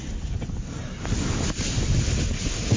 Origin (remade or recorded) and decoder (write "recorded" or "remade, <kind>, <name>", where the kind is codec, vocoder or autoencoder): recorded